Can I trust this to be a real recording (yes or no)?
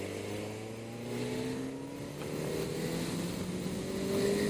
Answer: yes